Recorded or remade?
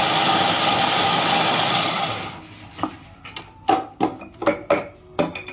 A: recorded